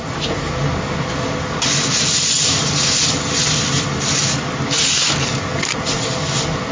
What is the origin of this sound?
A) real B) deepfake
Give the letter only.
A